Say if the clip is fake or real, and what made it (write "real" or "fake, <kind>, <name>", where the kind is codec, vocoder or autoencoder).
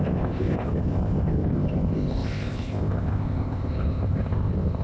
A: fake, codec, ZipCodec